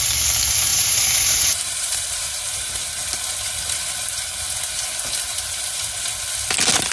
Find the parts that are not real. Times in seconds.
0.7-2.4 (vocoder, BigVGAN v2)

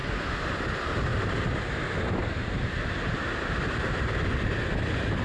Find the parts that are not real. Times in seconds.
1.1-4.2 (vocoder, BigVGAN v2)

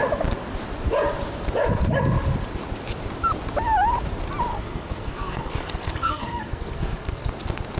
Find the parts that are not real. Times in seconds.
4.5-7.3 (codec, SNAC)

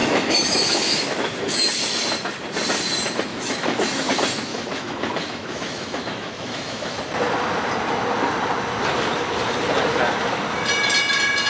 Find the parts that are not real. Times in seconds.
0.0-1.7 (autoencoder, DAC-VAE); 3.3-4.1; 4.5-7.0